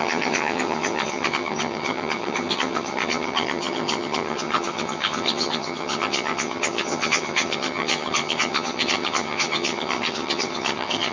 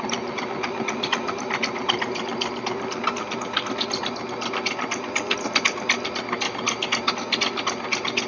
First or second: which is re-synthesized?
first